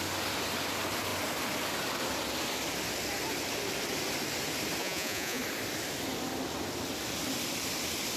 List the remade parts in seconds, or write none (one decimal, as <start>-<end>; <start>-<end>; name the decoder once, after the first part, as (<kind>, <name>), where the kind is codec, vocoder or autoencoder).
4.8-5.4 (vocoder, Vocos)